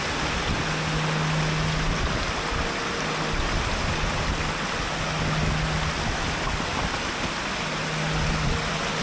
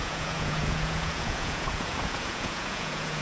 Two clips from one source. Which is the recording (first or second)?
first